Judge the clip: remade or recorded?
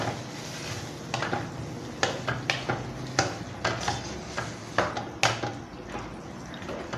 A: recorded